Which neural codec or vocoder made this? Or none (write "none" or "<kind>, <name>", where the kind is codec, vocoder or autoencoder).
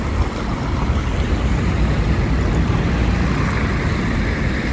none